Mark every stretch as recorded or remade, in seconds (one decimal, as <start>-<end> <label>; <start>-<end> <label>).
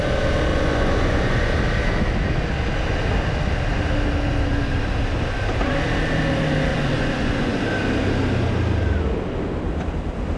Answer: 0.0-0.5 recorded; 0.5-1.5 remade; 1.5-6.7 recorded; 6.7-7.6 remade; 7.6-10.4 recorded